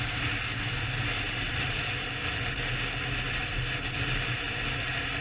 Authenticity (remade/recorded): recorded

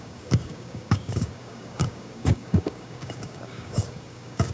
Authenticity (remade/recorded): remade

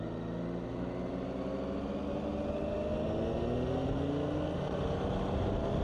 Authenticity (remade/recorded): recorded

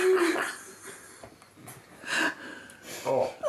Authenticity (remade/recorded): recorded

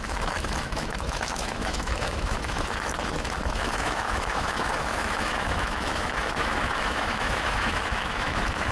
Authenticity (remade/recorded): remade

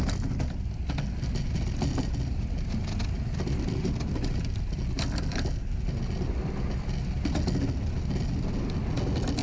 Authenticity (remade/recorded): recorded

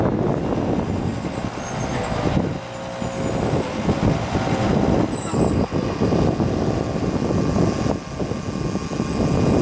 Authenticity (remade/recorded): recorded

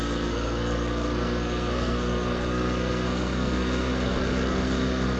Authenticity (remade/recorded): remade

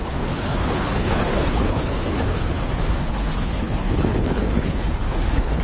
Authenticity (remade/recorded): remade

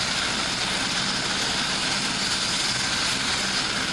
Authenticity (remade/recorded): recorded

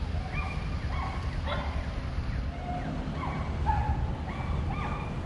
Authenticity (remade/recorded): recorded